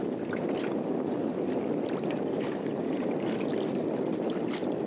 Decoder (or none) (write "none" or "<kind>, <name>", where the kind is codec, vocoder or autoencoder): none